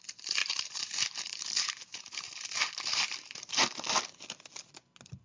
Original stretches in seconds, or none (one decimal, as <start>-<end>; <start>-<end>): 0.0-0.4; 3.5-5.2